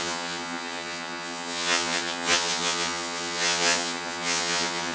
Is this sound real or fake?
fake